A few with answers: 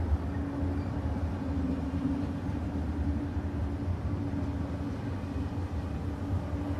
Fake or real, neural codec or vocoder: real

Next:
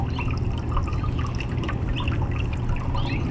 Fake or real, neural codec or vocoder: real